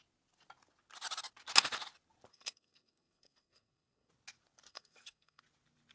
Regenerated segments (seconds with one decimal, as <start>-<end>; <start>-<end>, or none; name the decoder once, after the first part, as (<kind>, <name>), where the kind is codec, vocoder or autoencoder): 2.3-4.1 (codec, SNAC); 4.7-5.4